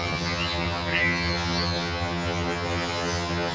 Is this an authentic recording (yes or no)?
no